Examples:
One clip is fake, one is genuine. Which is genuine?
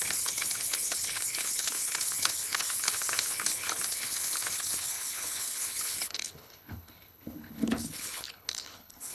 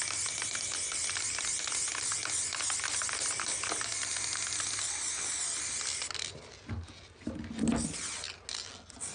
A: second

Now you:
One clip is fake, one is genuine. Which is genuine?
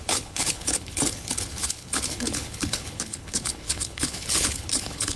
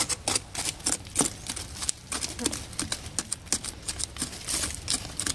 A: second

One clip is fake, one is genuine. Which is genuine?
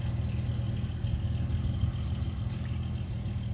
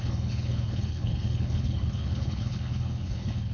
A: first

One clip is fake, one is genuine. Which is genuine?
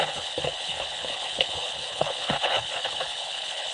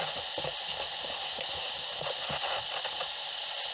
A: second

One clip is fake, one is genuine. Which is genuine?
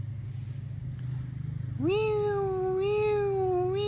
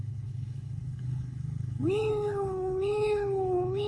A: first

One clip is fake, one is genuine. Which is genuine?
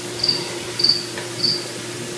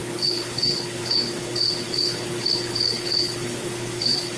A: first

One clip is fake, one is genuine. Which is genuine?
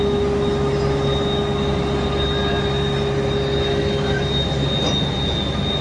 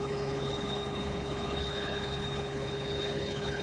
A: first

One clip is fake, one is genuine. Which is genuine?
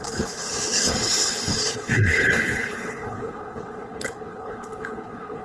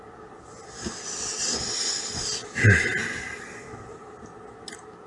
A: second